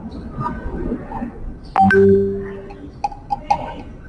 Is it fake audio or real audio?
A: real